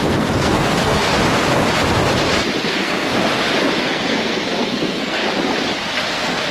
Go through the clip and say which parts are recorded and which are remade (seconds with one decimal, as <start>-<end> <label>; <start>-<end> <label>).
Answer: 0.0-1.1 remade; 1.1-2.6 recorded; 2.6-3.1 remade; 3.1-3.8 recorded; 3.8-5.2 remade; 5.2-6.1 recorded; 6.1-6.5 remade